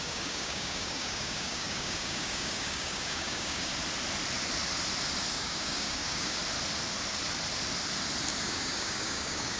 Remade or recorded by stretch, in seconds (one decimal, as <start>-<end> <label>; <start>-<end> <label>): 0.0-3.7 remade; 3.7-5.3 recorded; 5.3-6.4 remade; 6.4-8.4 recorded; 8.4-9.6 remade